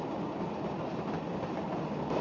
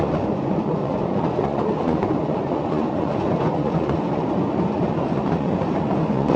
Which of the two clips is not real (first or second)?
second